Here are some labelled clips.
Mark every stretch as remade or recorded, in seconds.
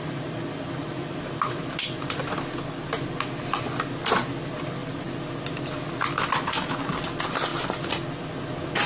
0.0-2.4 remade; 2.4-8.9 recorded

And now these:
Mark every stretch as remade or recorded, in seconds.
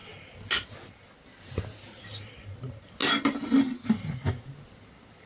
0.0-5.3 recorded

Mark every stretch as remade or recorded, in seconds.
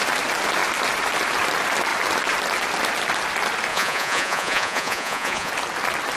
0.0-3.7 recorded; 3.7-5.5 remade; 5.5-6.2 recorded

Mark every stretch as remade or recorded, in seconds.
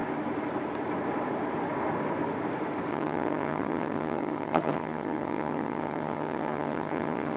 0.0-2.9 recorded; 2.9-7.4 remade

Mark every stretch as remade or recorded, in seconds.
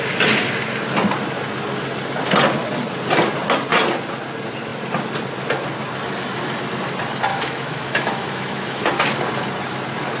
0.0-7.3 recorded; 7.3-8.9 remade; 8.9-10.2 recorded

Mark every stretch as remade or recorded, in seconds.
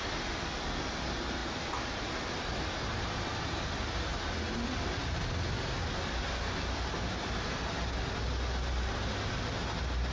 0.0-10.1 recorded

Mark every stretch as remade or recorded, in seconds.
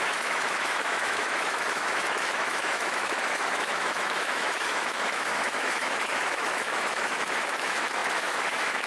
0.0-8.9 remade